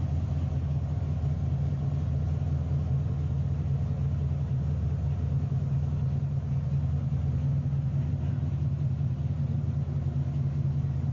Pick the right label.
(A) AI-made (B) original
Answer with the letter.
B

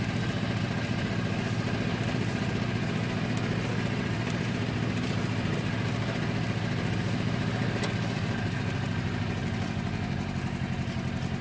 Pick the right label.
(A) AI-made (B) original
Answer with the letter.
B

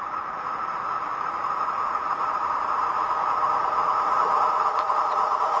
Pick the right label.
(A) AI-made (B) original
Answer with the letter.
A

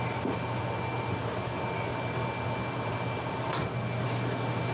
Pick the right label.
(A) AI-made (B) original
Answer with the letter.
B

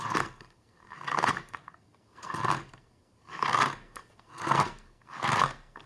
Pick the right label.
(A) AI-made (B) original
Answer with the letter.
A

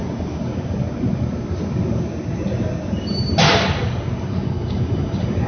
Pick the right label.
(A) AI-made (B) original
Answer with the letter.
B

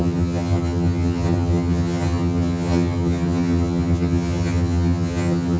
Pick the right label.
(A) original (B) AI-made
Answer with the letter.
B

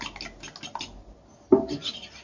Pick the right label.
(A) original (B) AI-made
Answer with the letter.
A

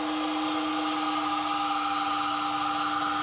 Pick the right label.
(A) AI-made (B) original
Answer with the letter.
B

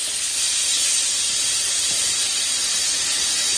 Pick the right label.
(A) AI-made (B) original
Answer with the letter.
B